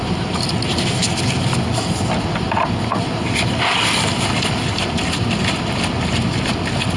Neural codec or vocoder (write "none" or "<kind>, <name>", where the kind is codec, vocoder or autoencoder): none